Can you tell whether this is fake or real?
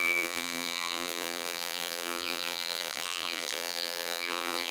fake